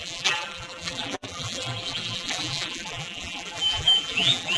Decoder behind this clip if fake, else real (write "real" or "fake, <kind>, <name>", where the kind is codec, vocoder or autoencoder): fake, vocoder, BigVGAN v2